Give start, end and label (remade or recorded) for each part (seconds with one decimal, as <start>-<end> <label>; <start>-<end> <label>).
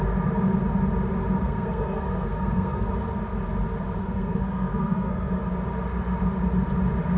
0.0-1.4 recorded; 1.4-2.9 remade; 2.9-4.0 recorded; 4.0-5.5 remade; 5.5-7.2 recorded